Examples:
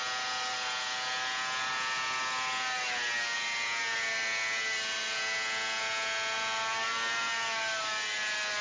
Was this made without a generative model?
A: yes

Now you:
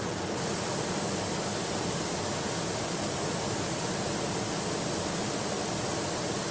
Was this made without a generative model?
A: yes